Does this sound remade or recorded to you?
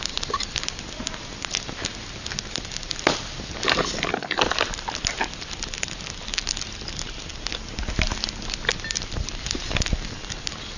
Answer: recorded